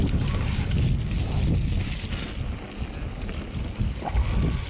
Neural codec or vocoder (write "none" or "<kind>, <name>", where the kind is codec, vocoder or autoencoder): none